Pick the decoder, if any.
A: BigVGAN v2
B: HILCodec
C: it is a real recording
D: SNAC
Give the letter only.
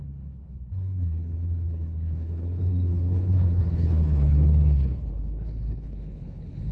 B